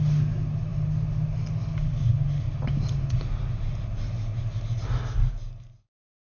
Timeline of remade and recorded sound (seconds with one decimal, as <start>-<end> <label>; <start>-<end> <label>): 0.0-6.2 recorded